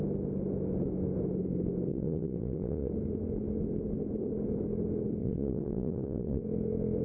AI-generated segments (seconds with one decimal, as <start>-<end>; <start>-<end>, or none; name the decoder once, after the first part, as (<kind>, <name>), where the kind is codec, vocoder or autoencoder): 1.9-2.9 (vocoder, Vocos); 5.2-6.4